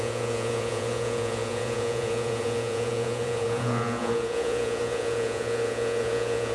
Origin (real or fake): fake